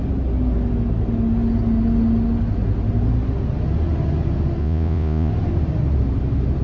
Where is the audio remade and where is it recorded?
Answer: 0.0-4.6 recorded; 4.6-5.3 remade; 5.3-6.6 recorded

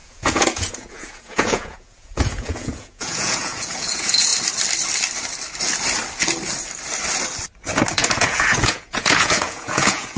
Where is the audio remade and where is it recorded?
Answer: 0.0-4.3 remade; 4.3-7.9 recorded; 7.9-10.2 remade